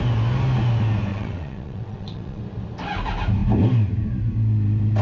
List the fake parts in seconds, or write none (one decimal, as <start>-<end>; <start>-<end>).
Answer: 1.1-2.4